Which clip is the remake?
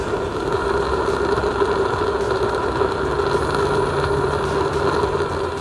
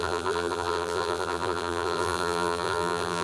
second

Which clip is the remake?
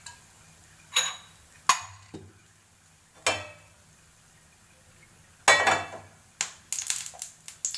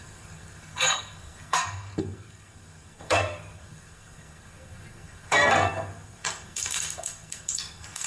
second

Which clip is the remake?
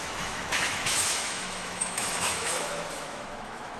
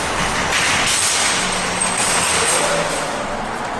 first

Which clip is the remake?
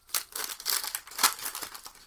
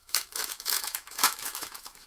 second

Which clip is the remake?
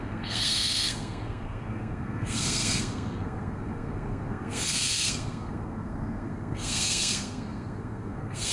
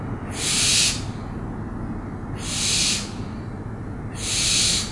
first